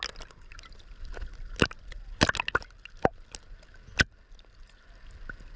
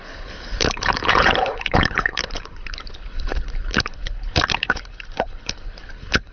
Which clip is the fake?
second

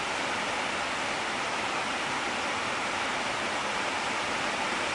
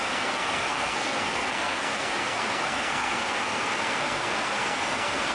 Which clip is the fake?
second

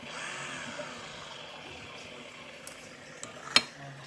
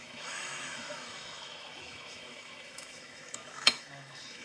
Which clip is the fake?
second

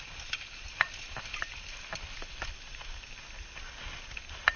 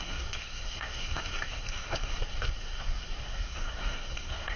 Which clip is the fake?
second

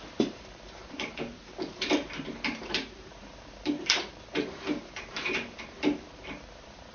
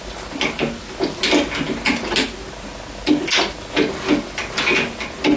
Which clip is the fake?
first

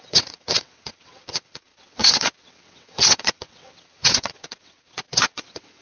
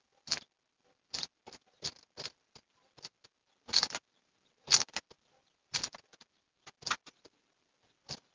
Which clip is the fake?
first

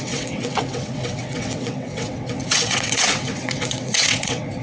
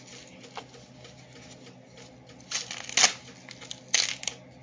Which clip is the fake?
first